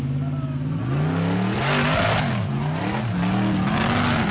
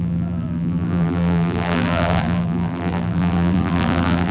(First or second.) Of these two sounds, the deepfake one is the second